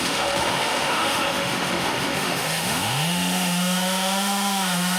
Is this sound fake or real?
fake